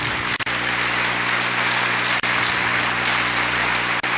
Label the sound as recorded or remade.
recorded